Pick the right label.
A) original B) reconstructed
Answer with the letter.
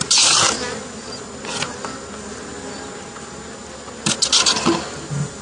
A